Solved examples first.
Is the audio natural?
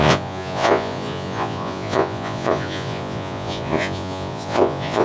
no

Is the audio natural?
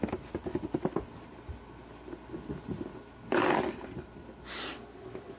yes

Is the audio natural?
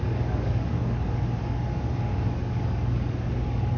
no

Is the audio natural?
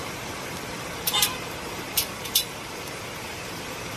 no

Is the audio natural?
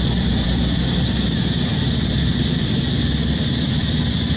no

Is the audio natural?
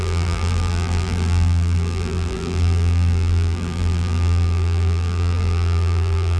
no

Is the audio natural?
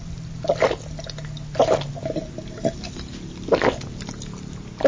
yes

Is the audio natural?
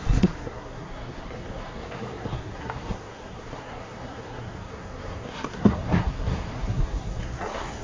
no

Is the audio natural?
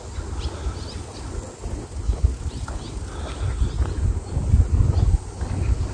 yes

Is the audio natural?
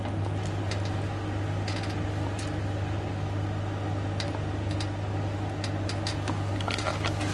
yes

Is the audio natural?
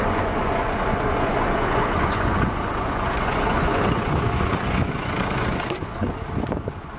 no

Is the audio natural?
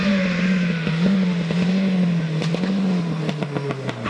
yes